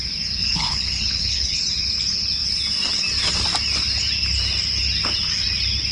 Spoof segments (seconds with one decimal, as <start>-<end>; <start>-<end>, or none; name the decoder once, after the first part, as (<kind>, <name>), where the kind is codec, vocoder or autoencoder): 0.4-1.6 (codec, HILCodec)